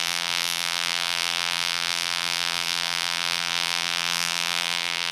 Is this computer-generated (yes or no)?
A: yes